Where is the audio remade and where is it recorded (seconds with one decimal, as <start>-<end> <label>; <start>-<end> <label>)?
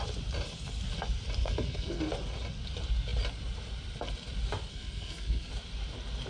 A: 0.0-1.4 recorded; 1.4-2.0 remade; 2.0-4.7 recorded; 4.7-5.5 remade; 5.5-6.3 recorded